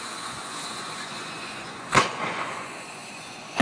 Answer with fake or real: fake